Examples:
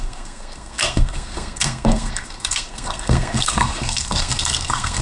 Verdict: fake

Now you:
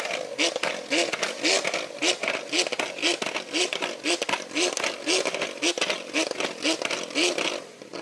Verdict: real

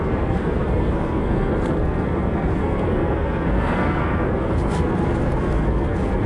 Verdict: fake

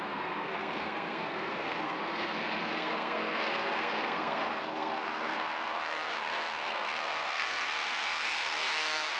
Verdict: fake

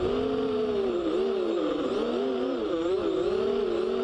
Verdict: real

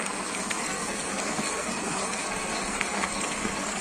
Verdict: fake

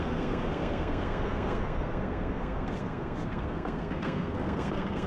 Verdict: fake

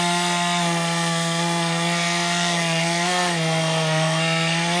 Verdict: fake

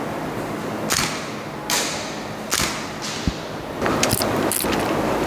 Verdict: real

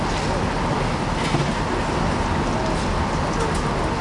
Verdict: real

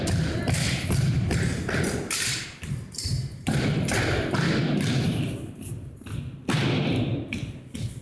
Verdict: real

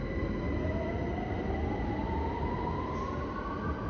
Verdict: real